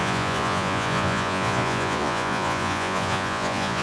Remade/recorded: remade